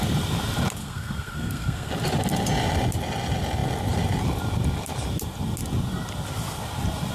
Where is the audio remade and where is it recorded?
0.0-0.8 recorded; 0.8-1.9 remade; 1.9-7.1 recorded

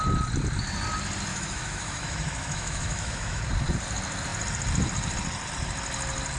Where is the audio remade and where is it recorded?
0.0-1.3 recorded; 1.3-3.4 remade; 3.4-6.4 recorded

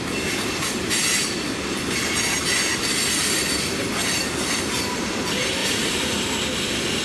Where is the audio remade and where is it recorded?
0.0-5.6 recorded; 5.6-6.2 remade; 6.2-7.0 recorded

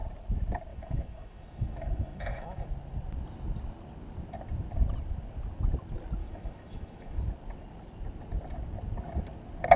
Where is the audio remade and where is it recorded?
0.0-0.7 recorded; 0.7-2.7 remade; 2.7-6.2 recorded; 6.2-7.2 remade; 7.2-9.8 recorded

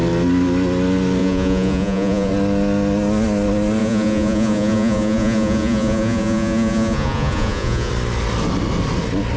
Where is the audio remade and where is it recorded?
0.0-1.2 recorded; 1.2-2.3 remade; 2.3-3.8 recorded; 3.8-7.9 remade; 7.9-9.4 recorded

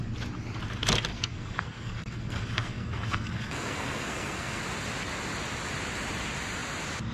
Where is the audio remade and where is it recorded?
0.0-1.1 recorded; 1.1-4.6 remade; 4.6-7.1 recorded

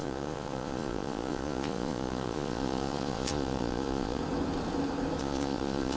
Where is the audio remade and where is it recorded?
0.0-4.2 remade; 4.2-5.2 recorded; 5.2-6.0 remade